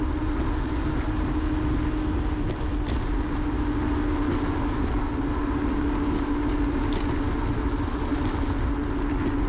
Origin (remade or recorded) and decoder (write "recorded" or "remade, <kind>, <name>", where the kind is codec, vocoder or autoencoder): recorded